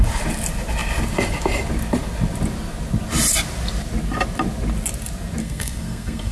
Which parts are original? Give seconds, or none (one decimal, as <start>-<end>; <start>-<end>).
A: 0.0-5.4